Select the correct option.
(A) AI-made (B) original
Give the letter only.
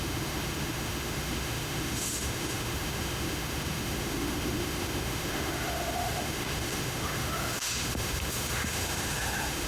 A